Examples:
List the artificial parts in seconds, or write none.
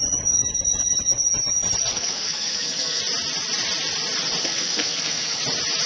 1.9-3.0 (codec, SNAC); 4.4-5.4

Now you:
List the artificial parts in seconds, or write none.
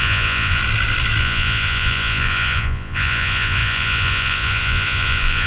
0.0-0.6 (vocoder, Vocos); 1.2-5.5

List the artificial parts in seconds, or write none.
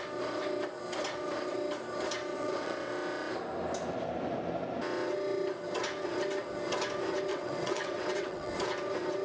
2.3-2.9 (vocoder, WaveNeXt); 7.3-8.5